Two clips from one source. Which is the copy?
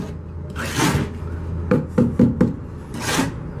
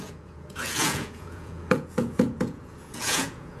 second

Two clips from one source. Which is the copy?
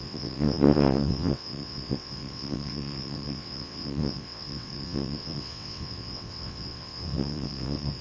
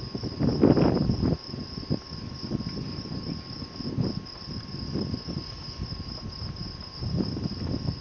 first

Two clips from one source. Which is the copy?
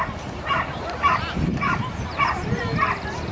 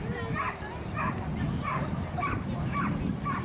first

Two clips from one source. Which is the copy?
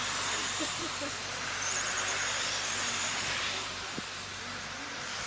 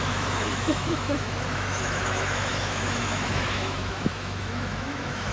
second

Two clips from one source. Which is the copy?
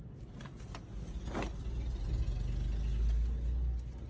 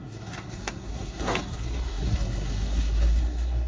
second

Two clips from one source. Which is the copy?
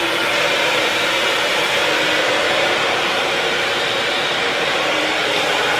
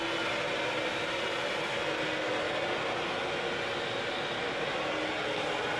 first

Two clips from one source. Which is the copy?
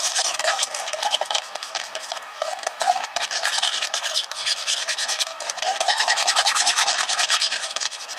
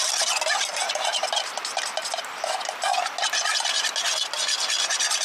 first